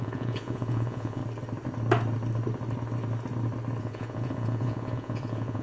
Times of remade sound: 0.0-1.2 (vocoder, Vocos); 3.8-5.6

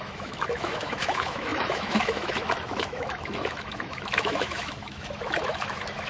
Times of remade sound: 0.0-6.1 (autoencoder, DAC-VAE)

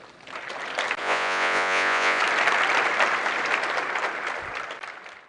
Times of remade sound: 1.0-2.2 (vocoder, Vocos)

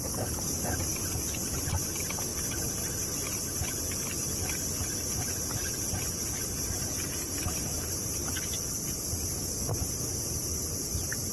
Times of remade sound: none

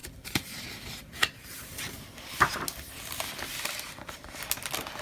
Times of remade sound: none